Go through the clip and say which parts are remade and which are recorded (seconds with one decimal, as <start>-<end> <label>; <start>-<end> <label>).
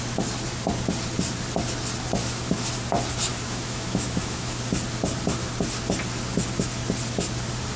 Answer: 0.0-2.2 recorded; 2.2-2.7 remade; 2.7-3.3 recorded; 3.3-4.6 remade; 4.6-7.8 recorded